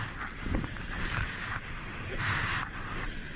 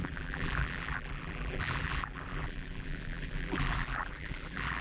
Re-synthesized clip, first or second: second